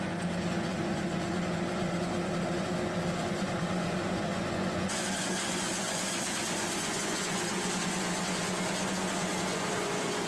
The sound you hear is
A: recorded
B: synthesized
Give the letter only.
B